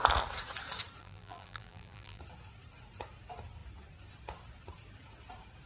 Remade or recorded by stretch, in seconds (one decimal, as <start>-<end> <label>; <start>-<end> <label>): 0.0-1.0 recorded; 1.0-2.2 remade; 2.2-5.7 recorded